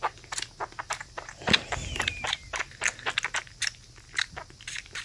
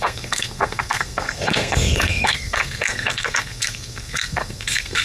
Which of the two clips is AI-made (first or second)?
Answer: second